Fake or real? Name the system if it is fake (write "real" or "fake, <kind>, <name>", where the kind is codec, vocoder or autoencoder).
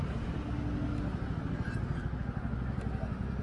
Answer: real